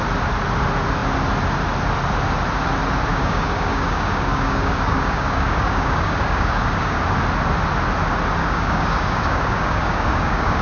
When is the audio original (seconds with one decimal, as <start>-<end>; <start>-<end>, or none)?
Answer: 0.0-3.1; 7.0-8.4